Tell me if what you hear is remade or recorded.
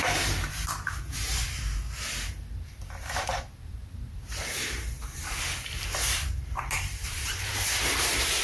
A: remade